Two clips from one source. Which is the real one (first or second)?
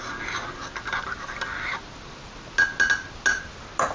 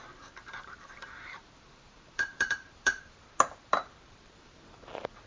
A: first